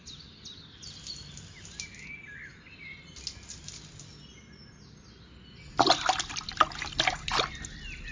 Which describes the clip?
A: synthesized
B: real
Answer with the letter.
B